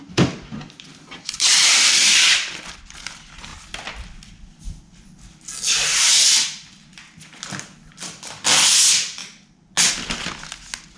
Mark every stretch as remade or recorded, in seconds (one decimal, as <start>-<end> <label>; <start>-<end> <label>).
0.0-0.5 recorded; 0.5-2.1 remade; 2.1-11.0 recorded